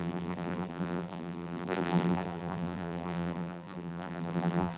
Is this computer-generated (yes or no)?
yes